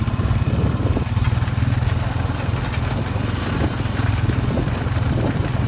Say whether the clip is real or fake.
real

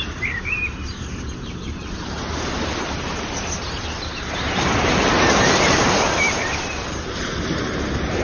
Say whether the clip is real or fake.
fake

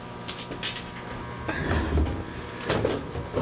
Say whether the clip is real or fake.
real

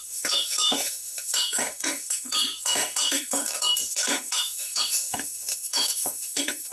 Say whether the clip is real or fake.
fake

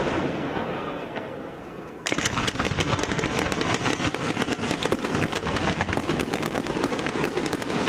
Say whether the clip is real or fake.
fake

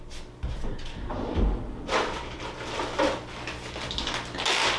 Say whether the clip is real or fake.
real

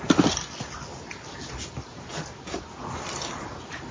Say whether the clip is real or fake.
real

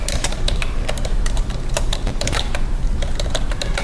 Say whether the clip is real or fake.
fake